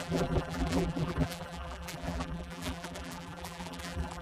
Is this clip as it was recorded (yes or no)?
no